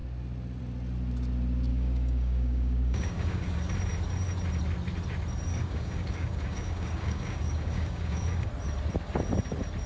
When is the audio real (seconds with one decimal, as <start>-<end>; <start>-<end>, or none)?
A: 0.0-1.7; 3.7-5.5; 8.5-9.9